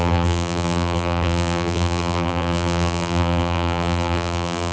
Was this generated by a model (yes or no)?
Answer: yes